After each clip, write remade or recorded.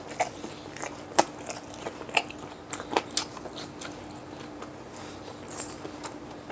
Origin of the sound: recorded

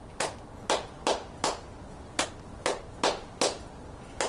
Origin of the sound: recorded